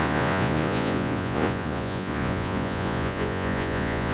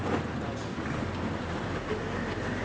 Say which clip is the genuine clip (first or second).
second